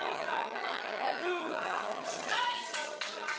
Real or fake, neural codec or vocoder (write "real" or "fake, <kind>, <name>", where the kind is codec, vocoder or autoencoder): fake, vocoder, HiFi-GAN